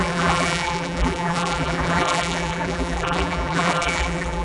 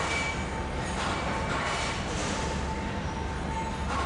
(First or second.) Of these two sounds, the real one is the second